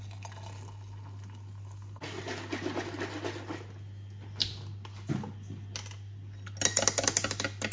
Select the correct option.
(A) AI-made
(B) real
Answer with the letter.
B